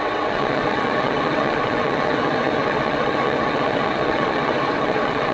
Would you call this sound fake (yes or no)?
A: yes